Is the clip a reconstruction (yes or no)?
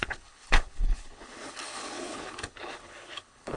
yes